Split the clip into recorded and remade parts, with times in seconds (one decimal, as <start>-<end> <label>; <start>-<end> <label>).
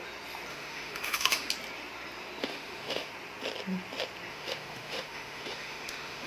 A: 0.0-0.5 recorded; 0.5-1.5 remade; 1.5-2.4 recorded; 2.4-3.1 remade; 3.1-4.3 recorded; 4.3-6.3 remade